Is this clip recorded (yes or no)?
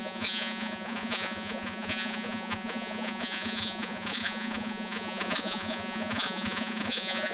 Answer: no